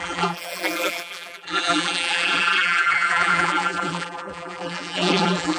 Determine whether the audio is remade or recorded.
remade